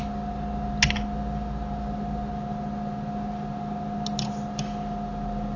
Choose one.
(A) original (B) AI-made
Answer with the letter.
A